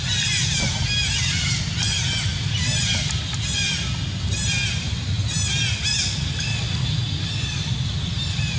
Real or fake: real